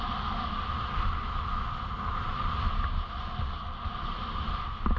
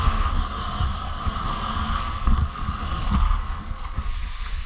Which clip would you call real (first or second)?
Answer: first